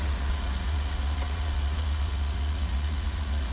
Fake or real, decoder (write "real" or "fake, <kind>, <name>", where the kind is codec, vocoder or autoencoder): fake, vocoder, Vocos